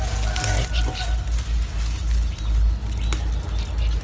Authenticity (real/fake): real